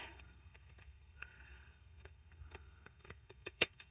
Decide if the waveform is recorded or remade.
remade